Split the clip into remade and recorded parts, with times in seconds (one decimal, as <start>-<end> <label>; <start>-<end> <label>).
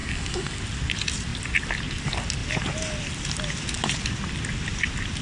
0.0-0.6 remade; 0.6-5.2 recorded